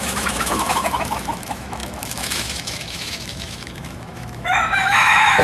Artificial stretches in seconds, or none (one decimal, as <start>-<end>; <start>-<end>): 0.0-5.4

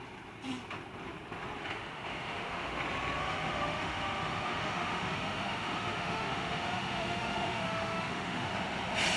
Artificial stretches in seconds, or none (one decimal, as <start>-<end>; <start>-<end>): 1.6-2.8; 3.2-8.5

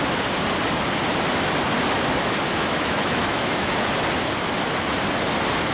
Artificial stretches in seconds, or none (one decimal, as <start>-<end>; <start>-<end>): 2.5-3.7

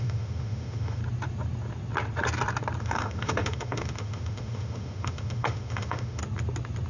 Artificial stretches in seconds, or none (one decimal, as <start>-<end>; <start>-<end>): 0.0-1.0; 2.8-6.2

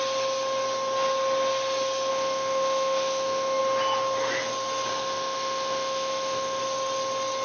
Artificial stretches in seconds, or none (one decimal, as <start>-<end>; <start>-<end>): 2.1-3.6; 4.9-6.6

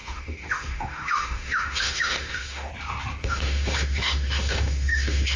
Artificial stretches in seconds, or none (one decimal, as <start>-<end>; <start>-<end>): 0.0-2.7; 3.2-5.4

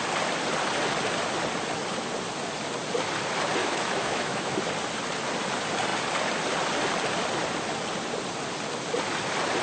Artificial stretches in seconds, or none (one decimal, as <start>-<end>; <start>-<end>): 3.6-4.5

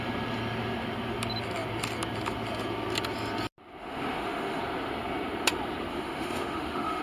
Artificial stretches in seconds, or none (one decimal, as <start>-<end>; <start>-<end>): 3.8-4.6; 5.9-7.0